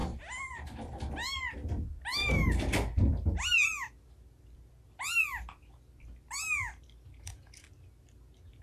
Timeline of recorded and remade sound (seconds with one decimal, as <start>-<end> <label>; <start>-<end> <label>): 0.0-8.6 recorded